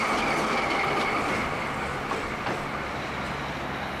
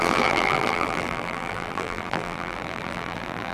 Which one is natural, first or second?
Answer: first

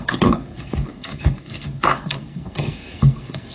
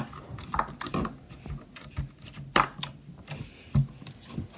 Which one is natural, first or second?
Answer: second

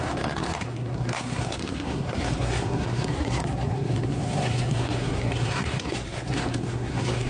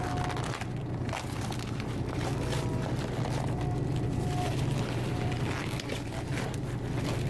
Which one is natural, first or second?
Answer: second